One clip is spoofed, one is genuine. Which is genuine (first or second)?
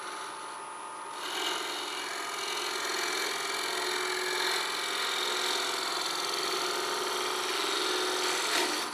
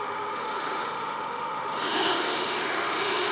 first